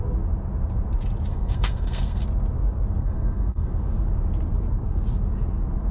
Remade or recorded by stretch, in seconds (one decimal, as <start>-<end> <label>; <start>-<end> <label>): 0.0-1.3 recorded; 1.3-2.2 remade; 2.2-3.0 recorded; 3.0-3.7 remade; 3.7-5.9 recorded